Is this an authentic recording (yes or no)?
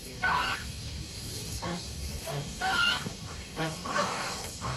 no